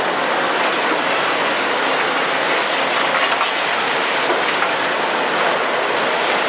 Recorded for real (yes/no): yes